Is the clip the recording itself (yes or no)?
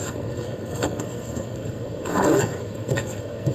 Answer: no